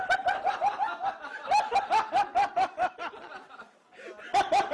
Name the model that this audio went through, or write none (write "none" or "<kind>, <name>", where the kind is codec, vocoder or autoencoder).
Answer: none